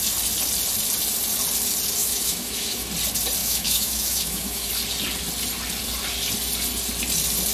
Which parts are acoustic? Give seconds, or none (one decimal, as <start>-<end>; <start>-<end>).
0.0-2.0; 2.9-3.4; 4.7-7.5